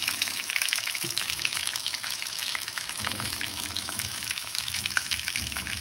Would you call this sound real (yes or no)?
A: no